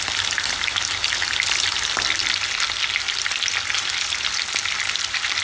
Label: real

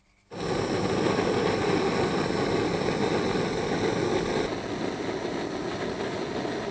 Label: real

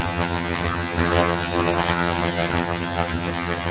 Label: fake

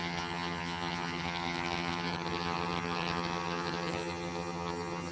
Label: fake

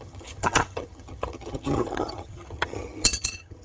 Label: fake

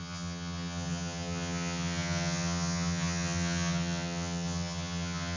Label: fake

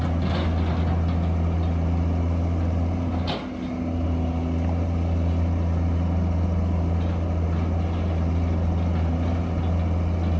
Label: real